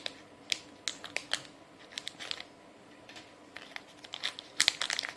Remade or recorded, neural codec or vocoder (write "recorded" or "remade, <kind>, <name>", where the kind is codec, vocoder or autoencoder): recorded